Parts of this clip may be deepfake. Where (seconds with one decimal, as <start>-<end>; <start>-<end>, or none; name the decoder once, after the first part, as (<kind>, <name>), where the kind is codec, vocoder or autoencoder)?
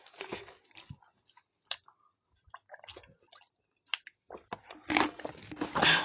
none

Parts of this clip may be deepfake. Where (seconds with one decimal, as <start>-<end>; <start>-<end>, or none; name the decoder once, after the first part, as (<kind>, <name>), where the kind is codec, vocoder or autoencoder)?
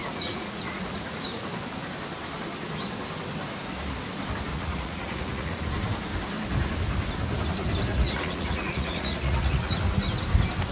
0.0-1.4 (vocoder, Vocos); 4.5-5.6; 7.9-9.8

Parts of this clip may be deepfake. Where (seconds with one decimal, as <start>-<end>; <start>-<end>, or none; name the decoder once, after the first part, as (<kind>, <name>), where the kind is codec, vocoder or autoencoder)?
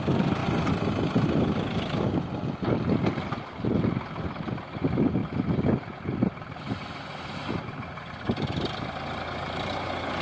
none